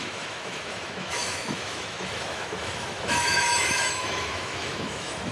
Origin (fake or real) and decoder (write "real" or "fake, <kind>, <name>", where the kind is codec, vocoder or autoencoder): fake, autoencoder, DAC-VAE